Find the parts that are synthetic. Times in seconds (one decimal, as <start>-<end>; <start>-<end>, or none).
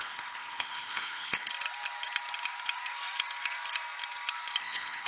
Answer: 0.0-1.5; 4.6-5.1